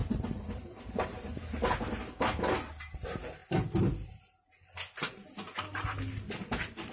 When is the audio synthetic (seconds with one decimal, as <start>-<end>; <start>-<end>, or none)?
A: 0.0-1.9